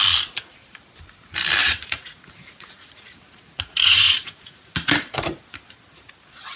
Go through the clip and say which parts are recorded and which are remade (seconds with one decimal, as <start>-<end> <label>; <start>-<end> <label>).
0.0-1.6 recorded; 1.6-4.9 remade; 4.9-6.6 recorded